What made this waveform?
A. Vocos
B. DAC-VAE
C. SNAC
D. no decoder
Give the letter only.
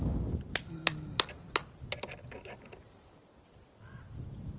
D